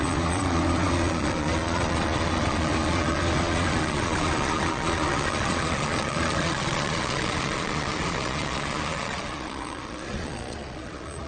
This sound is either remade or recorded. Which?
remade